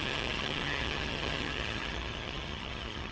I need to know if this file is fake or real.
fake